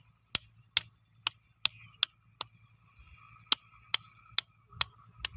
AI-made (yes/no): no